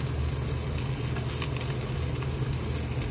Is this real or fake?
real